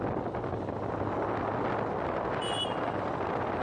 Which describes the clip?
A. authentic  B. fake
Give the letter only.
A